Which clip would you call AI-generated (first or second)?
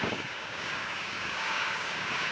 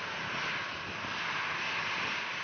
first